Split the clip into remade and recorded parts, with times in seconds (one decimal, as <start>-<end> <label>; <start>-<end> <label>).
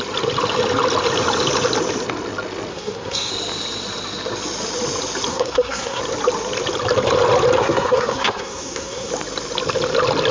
0.0-2.7 recorded; 2.7-3.3 remade; 3.3-5.3 recorded; 5.3-6.0 remade; 6.0-7.6 recorded; 7.6-9.1 remade; 9.1-10.3 recorded